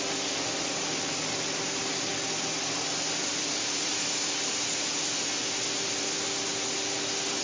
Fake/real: real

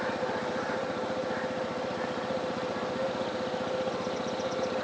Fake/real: real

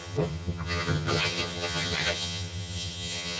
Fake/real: fake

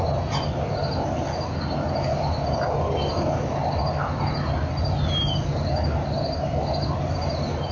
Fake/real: real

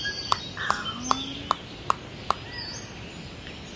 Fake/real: real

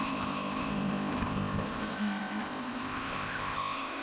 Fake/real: fake